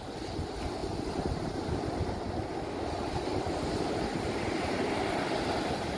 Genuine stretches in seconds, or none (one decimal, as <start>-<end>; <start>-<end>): 0.0-6.0